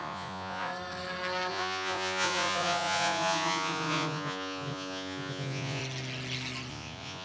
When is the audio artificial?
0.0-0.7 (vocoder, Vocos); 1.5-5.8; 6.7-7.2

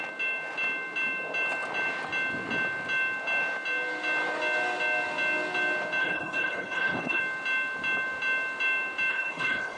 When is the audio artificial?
6.0-7.2 (codec, HILCodec); 9.1-9.8

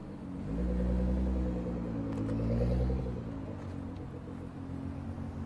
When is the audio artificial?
none

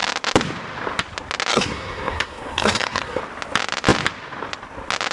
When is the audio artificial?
1.5-3.2 (codec, SNAC)

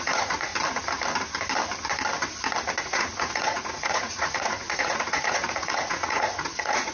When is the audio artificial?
0.0-0.5 (vocoder, Vocos); 2.8-6.9